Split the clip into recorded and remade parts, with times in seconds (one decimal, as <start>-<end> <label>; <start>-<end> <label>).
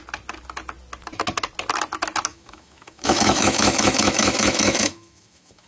0.0-2.3 recorded; 2.3-5.7 remade